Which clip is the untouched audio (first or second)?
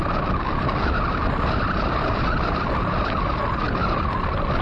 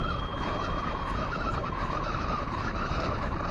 first